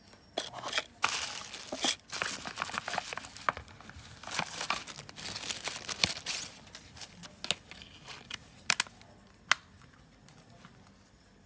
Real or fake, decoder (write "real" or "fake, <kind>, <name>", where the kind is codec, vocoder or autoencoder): real